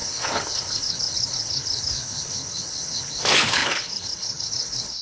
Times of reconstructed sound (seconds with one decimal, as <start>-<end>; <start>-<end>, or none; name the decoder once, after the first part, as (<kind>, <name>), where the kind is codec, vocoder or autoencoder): 0.0-5.0 (codec, HILCodec)